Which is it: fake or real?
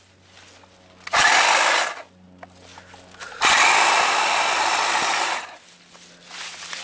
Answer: real